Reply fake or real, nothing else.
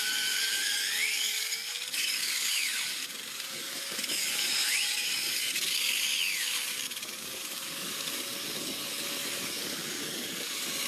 fake